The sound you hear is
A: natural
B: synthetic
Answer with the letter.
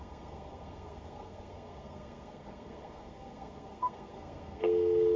B